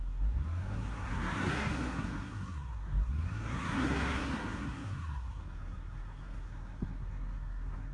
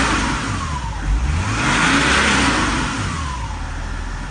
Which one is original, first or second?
second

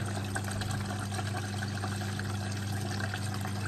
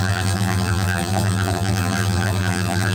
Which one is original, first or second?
first